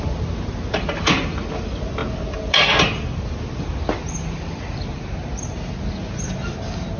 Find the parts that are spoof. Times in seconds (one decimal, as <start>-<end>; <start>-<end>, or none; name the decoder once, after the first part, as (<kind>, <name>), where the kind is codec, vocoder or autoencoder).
none